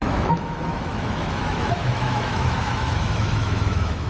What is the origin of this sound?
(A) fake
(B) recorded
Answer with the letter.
A